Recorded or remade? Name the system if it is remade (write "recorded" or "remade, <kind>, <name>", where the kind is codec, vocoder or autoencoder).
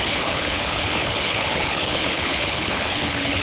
remade, codec, HILCodec